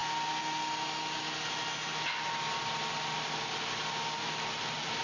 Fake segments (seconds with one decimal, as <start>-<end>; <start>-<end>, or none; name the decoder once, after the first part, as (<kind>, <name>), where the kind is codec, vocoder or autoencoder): none